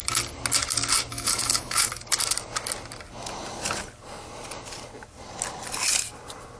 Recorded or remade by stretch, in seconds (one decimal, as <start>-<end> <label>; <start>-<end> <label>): 0.0-1.1 recorded; 1.1-1.9 remade; 1.9-6.6 recorded